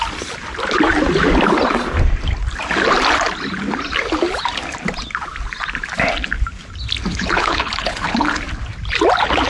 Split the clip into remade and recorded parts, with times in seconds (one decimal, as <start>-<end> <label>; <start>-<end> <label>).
0.0-7.1 recorded; 7.1-8.4 remade; 8.4-9.5 recorded